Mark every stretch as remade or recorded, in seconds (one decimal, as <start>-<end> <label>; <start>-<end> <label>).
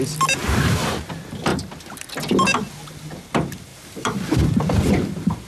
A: 0.0-0.4 recorded; 0.4-1.1 remade; 1.1-3.7 recorded; 3.7-4.6 remade; 4.6-5.5 recorded